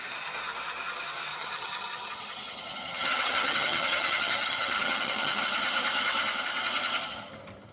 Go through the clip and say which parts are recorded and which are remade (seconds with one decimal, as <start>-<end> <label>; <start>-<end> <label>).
0.0-1.3 recorded; 1.3-5.4 remade; 5.4-7.7 recorded